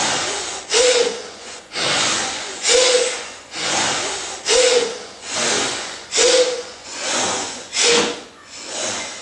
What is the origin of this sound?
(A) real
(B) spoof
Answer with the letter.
B